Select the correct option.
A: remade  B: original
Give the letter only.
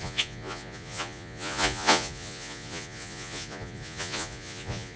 A